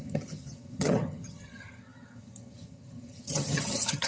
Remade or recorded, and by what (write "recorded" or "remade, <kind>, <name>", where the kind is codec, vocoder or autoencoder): remade, vocoder, HiFi-GAN